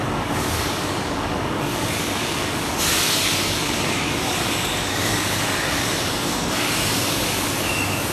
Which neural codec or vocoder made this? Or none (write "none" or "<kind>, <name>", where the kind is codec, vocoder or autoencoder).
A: codec, DAC